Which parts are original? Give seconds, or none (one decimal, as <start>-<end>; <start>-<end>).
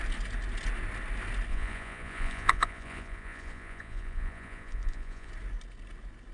0.0-1.5; 5.3-6.3